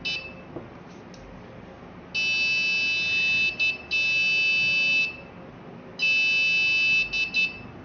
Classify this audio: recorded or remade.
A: recorded